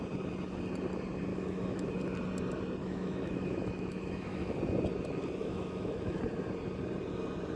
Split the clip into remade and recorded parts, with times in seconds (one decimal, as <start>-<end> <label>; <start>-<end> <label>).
0.0-1.3 recorded; 1.3-1.9 remade; 1.9-2.8 recorded; 2.8-4.6 remade; 4.6-5.4 recorded; 5.4-6.2 remade; 6.2-7.6 recorded